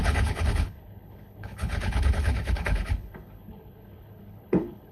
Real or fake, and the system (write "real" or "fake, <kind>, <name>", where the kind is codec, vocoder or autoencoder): fake, codec, HILCodec